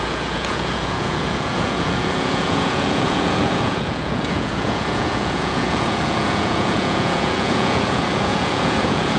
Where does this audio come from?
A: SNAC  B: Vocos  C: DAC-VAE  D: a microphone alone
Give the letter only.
B